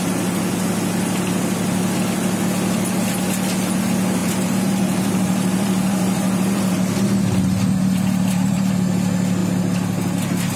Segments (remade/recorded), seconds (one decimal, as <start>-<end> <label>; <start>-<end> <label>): 0.0-4.2 recorded; 4.2-8.7 remade; 8.7-10.6 recorded